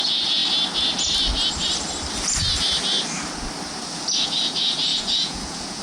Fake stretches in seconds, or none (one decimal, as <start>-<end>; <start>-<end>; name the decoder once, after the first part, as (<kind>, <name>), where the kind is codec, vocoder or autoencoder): 0.0-0.4 (vocoder, Vocos); 3.7-5.8